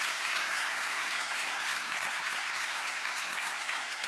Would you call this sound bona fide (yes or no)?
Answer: no